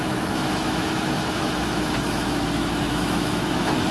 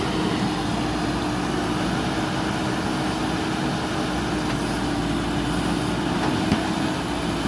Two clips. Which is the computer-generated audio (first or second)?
first